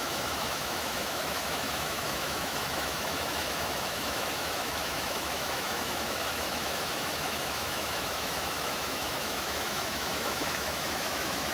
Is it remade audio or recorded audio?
remade